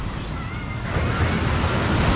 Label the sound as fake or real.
real